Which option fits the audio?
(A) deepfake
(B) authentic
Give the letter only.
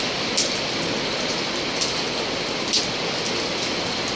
B